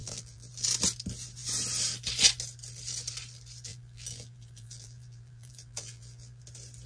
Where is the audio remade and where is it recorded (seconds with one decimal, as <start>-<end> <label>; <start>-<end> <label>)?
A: 0.0-0.5 remade; 0.5-3.7 recorded; 3.7-6.4 remade; 6.4-6.9 recorded